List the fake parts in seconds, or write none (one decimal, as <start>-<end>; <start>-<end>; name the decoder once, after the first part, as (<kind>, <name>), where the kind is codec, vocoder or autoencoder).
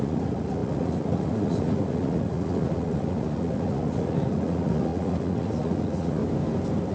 0.0-6.2 (vocoder, Vocos)